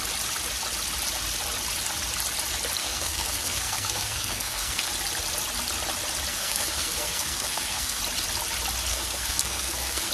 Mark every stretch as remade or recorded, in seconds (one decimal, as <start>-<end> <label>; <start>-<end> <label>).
0.0-2.8 recorded; 2.8-4.9 remade; 4.9-6.3 recorded; 6.3-8.0 remade; 8.0-8.9 recorded; 8.9-10.1 remade